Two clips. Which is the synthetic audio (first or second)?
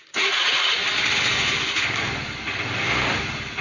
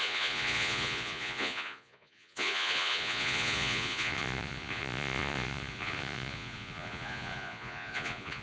second